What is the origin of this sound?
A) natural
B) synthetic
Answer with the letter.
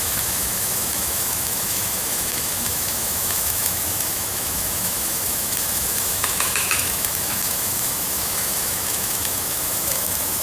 B